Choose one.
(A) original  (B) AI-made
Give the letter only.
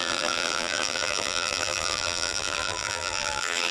B